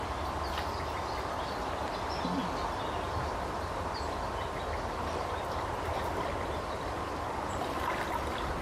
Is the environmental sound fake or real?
real